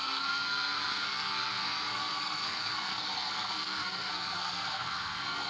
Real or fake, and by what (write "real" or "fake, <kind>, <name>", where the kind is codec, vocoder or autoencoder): fake, codec, SNAC